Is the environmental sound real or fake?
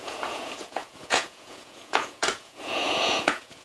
fake